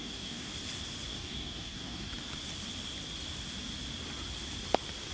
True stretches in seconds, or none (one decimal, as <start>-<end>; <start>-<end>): 0.5-1.1; 2.1-5.1